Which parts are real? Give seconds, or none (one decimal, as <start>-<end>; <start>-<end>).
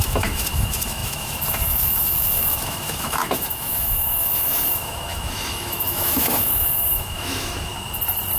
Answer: 7.7-8.4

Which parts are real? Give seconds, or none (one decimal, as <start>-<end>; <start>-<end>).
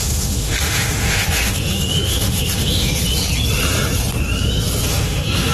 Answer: 3.0-4.9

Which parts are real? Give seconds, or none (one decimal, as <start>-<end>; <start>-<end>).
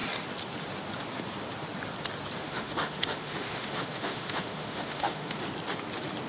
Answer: 0.0-2.4; 5.4-6.3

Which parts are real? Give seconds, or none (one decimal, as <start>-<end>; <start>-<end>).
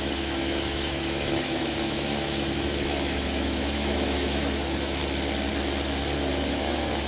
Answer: 5.0-6.5